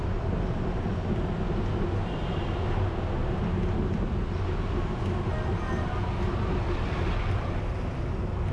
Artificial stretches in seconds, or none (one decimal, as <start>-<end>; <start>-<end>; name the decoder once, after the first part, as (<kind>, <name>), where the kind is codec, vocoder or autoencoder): none